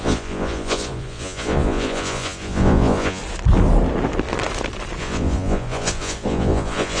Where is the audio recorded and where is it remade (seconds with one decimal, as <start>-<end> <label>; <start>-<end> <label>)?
0.0-3.2 remade; 3.2-5.0 recorded; 5.0-7.0 remade